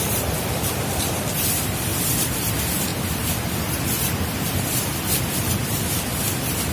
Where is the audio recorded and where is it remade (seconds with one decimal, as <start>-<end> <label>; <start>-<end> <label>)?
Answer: 0.0-6.7 remade